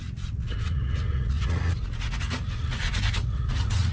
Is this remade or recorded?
remade